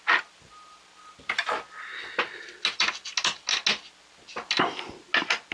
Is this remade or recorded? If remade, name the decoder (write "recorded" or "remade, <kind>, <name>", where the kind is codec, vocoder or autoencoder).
recorded